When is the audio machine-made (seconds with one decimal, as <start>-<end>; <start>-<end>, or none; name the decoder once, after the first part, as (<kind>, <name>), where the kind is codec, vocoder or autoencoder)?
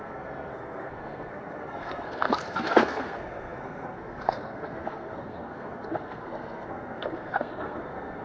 0.0-8.2 (codec, SNAC)